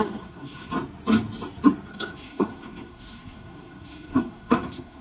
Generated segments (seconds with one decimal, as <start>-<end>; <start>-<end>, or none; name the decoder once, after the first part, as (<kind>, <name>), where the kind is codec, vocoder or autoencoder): 0.0-0.7 (codec, SNAC); 1.9-5.0